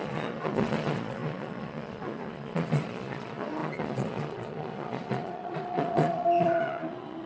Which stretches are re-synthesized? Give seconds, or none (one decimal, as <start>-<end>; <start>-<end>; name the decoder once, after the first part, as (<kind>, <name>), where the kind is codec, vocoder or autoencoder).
0.0-7.3 (vocoder, Vocos)